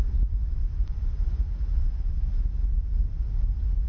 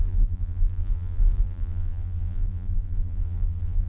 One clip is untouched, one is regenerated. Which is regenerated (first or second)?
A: second